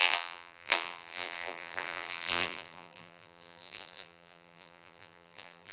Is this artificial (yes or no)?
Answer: yes